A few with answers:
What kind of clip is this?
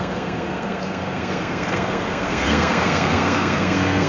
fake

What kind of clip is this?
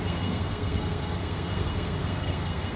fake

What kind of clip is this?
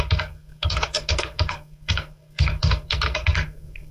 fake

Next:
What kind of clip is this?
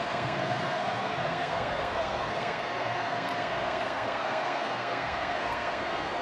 fake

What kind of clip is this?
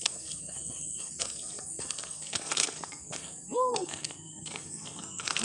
fake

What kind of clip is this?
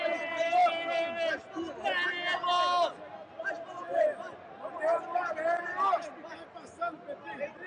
real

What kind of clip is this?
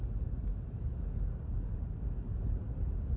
real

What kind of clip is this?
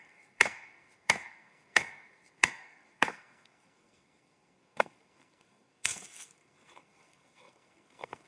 fake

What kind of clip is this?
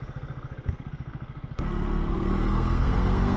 fake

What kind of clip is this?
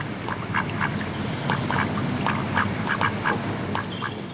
real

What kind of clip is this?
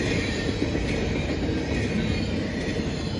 real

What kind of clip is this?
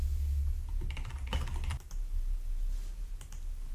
real